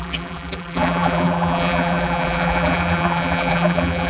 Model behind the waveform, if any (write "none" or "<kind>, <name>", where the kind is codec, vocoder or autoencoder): vocoder, BigVGAN v2